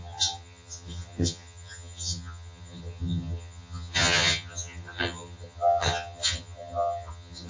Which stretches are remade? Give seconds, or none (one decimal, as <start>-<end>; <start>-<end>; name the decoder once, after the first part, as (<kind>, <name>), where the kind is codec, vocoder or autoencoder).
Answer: 0.0-7.5 (vocoder, HiFi-GAN)

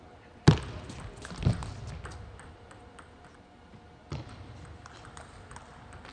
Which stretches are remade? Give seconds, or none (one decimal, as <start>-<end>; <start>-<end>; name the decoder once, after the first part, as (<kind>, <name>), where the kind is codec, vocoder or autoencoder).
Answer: none

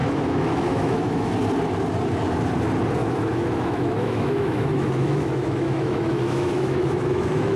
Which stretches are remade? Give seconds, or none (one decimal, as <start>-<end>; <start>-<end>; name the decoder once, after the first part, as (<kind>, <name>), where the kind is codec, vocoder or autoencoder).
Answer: 0.0-1.3 (autoencoder, DAC-VAE); 3.0-7.6

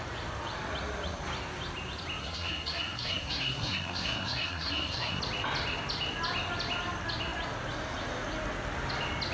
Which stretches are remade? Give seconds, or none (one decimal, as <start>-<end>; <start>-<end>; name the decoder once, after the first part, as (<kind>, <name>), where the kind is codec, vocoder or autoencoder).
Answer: 2.2-5.2 (codec, SNAC)